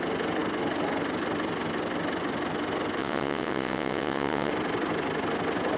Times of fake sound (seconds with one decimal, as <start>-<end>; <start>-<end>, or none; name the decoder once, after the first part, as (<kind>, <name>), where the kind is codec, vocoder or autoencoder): 3.0-4.5 (vocoder, WaveNeXt)